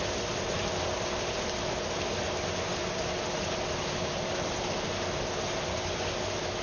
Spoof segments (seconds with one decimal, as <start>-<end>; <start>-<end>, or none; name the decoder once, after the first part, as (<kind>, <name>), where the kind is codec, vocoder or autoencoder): none